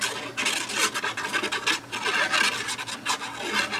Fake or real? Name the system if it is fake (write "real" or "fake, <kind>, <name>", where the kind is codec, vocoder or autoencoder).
real